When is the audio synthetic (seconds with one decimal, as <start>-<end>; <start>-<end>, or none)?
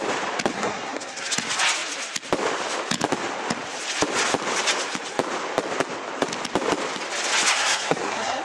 0.5-1.3; 7.5-8.4